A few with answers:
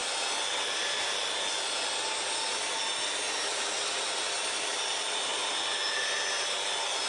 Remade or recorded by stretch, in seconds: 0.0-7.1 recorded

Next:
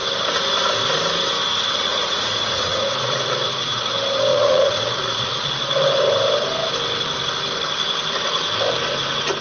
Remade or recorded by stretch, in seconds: 0.0-1.9 recorded; 1.9-3.8 remade; 3.8-4.3 recorded; 4.3-5.5 remade; 5.5-9.4 recorded

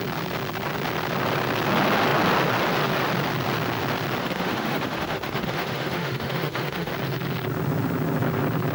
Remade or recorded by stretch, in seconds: 0.0-4.2 recorded; 4.2-6.9 remade; 6.9-8.7 recorded

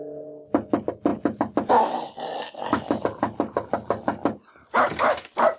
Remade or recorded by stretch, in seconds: 0.0-5.6 recorded